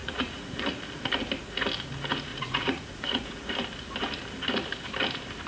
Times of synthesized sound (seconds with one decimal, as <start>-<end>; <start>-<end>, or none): 0.0-0.6; 2.3-3.5